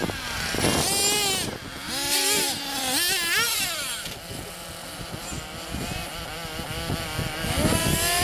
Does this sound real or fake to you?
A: real